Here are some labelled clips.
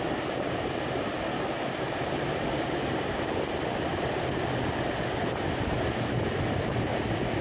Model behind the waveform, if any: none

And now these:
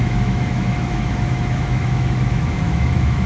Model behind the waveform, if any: autoencoder, DAC-VAE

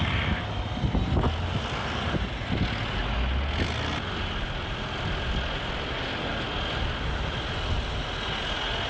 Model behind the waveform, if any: none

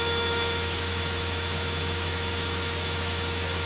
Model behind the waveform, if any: autoencoder, DAC-VAE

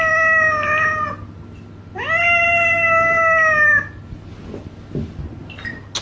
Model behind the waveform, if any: none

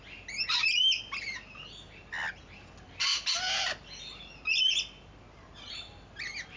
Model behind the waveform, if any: none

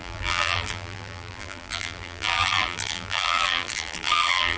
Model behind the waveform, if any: vocoder, BigVGAN v2